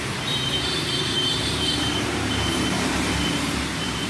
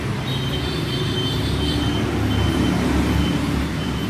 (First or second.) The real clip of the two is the second